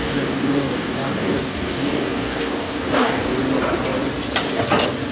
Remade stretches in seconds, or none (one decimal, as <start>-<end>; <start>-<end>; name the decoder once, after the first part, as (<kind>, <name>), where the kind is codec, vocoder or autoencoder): 0.0-3.4 (codec, DAC)